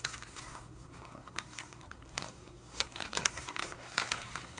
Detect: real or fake fake